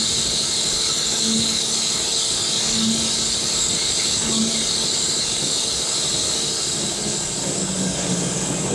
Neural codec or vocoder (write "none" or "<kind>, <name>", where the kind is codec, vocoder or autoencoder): codec, DAC